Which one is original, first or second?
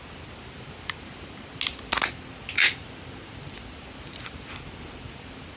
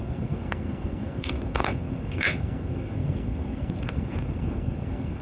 first